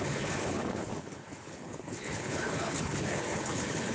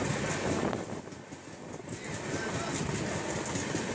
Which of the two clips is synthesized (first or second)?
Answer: first